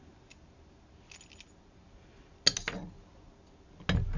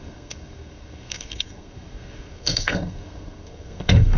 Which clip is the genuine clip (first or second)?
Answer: first